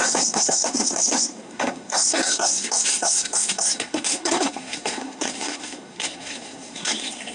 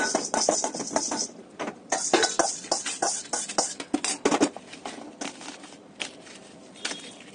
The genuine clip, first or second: second